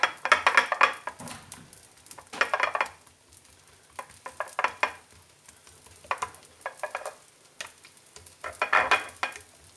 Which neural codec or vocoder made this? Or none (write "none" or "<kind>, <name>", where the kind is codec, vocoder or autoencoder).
none